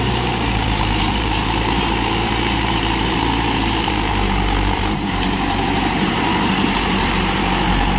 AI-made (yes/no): yes